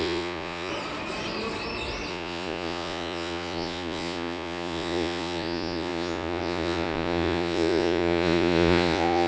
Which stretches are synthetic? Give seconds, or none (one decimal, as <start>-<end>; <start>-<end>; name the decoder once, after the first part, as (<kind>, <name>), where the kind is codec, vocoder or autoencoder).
0.0-0.7 (vocoder, Vocos); 2.1-9.3